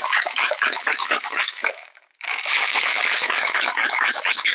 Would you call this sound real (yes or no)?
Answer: no